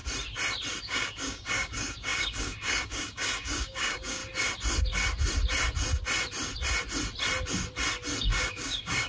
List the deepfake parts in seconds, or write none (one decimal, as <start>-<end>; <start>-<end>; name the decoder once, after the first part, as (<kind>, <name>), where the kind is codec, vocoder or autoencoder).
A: 0.8-4.2 (codec, DAC); 8.2-9.1